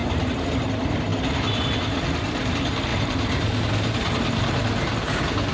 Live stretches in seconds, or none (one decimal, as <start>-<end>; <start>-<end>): 0.7-1.1; 1.6-2.9